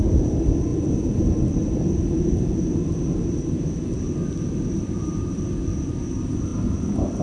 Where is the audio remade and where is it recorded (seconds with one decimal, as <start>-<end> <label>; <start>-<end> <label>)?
0.0-7.2 recorded